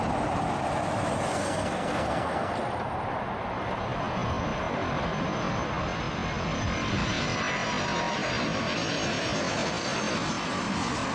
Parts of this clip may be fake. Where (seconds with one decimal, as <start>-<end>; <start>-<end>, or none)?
1.3-2.5